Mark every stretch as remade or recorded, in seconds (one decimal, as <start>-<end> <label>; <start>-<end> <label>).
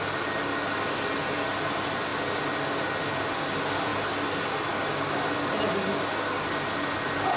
0.0-7.4 recorded